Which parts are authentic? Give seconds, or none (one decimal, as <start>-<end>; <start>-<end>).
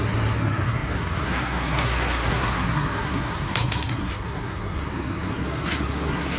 none